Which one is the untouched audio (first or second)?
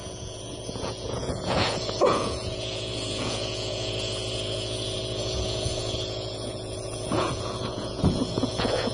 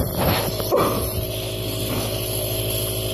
second